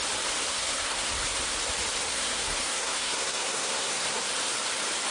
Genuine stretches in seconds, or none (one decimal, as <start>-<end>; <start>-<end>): 0.0-0.5; 1.1-2.1; 4.2-5.1